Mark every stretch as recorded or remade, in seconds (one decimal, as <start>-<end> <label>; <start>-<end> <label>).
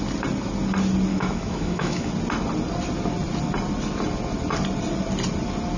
0.0-1.1 recorded; 1.1-2.1 remade; 2.1-5.8 recorded